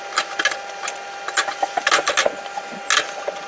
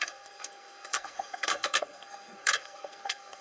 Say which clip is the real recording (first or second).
first